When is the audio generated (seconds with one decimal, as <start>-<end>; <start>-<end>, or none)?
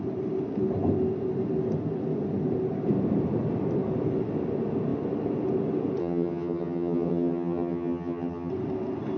6.0-8.5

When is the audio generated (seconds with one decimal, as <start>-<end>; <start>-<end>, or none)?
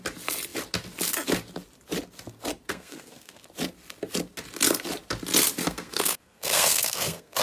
2.7-3.4; 5.6-7.4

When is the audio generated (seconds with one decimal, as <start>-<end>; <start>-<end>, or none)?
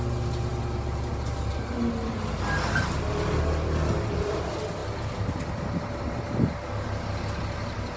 4.8-5.4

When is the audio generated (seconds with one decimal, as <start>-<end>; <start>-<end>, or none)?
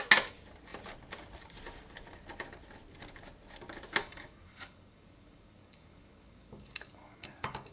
4.0-7.7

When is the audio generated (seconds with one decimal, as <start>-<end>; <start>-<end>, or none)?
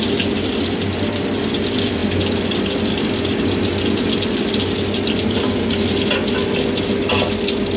none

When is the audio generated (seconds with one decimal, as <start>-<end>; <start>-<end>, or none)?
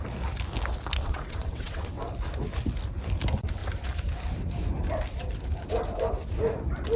1.0-2.0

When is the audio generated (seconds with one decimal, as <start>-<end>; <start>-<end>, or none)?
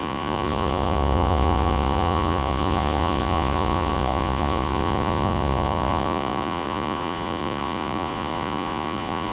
0.0-9.3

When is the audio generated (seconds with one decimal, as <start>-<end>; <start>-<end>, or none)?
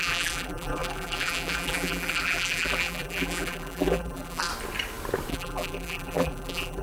0.0-4.5; 5.3-6.8